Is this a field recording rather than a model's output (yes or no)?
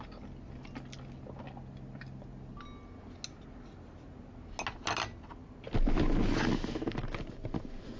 yes